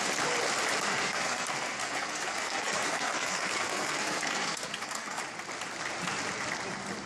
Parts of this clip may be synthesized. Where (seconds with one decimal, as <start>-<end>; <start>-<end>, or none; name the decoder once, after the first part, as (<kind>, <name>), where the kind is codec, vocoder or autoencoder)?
0.9-5.2 (codec, SNAC)